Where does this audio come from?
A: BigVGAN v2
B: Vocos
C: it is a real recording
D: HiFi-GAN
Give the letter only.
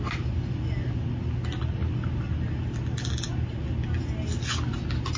C